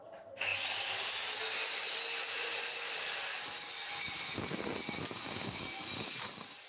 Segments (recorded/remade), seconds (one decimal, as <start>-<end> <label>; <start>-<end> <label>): 0.0-6.7 recorded